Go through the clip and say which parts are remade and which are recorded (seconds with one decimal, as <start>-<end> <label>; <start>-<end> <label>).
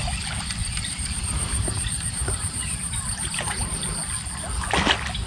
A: 0.0-0.6 recorded; 0.6-3.8 remade; 3.8-5.3 recorded